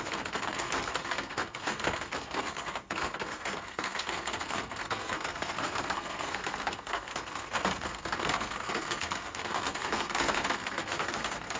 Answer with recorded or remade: remade